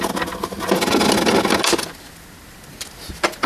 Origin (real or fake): real